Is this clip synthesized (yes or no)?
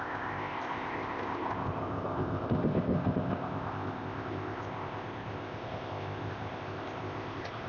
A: yes